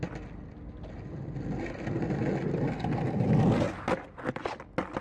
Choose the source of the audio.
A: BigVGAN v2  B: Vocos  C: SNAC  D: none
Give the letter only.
D